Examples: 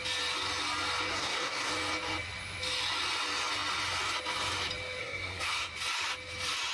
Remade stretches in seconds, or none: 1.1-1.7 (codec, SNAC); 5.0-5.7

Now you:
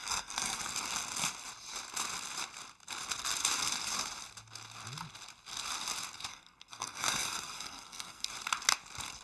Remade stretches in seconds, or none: 0.0-0.6 (codec, SNAC); 6.3-8.3

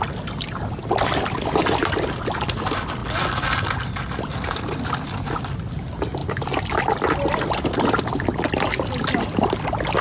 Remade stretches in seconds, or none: none

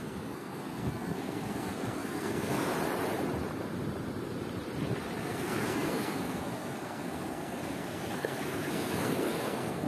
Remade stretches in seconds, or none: 0.0-2.7 (codec, SNAC); 5.2-9.9